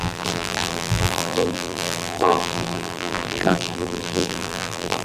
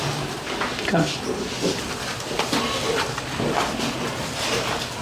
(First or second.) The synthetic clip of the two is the first